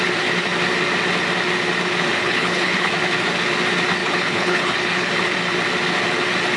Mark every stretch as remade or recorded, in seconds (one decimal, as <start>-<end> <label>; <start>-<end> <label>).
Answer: 0.0-2.2 recorded; 2.2-2.9 remade; 2.9-4.0 recorded; 4.0-5.1 remade; 5.1-6.6 recorded

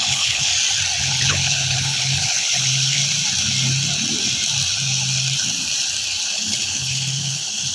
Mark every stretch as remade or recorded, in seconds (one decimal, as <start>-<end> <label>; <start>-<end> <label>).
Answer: 0.0-0.5 remade; 0.5-1.0 recorded; 1.0-3.0 remade; 3.0-6.2 recorded; 6.2-7.7 remade

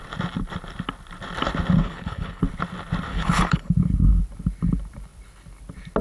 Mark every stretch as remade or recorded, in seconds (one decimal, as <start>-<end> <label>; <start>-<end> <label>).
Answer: 0.0-1.8 recorded; 1.8-2.4 remade; 2.4-3.1 recorded; 3.1-3.7 remade; 3.7-6.0 recorded

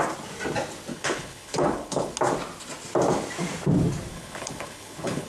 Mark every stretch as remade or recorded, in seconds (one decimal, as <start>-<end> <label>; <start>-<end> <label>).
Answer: 0.0-0.9 recorded; 0.9-2.1 remade; 2.1-4.1 recorded; 4.1-5.3 remade